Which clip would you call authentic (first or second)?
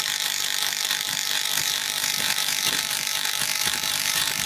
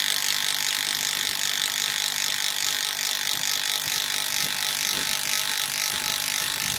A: second